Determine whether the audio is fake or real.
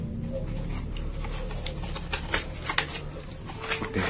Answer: real